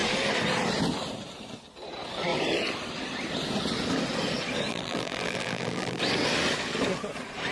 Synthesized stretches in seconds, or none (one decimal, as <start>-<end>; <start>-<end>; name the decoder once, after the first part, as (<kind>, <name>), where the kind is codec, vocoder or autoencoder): 4.7-6.0 (vocoder, BigVGAN v2)

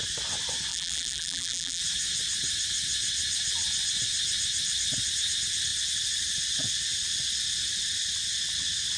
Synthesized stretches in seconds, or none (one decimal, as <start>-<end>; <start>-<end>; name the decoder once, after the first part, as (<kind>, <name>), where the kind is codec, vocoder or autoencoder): 0.7-1.8 (vocoder, BigVGAN v2)

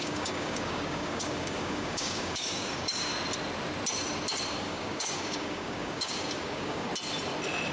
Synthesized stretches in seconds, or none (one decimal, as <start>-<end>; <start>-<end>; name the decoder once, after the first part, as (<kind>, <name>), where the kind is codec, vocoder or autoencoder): 0.0-3.1 (codec, DAC); 4.5-6.9

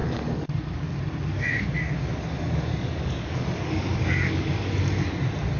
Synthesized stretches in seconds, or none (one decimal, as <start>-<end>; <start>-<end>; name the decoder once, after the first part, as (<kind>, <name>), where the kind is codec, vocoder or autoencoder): 0.0-0.9 (codec, DAC); 1.3-4.7

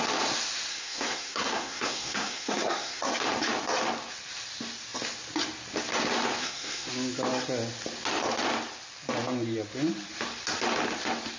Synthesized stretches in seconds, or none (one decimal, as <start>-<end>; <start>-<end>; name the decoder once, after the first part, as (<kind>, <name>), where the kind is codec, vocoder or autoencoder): 0.7-3.1 (codec, SNAC); 6.4-6.9

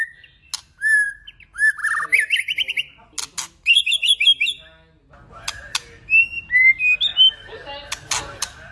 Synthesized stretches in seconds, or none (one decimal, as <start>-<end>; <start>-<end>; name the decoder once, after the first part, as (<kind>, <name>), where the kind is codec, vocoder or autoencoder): none

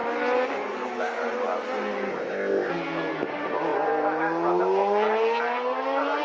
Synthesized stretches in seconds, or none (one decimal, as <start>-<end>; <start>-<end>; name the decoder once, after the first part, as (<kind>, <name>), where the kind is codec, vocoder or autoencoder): 2.1-2.7 (codec, ZipCodec)

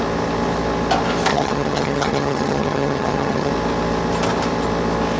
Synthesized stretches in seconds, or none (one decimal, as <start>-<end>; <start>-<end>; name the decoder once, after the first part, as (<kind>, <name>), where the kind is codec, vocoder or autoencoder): 1.3-3.5 (vocoder, HiFi-GAN)